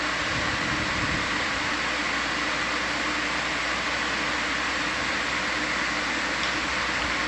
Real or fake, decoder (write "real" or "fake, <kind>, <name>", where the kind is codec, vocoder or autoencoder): real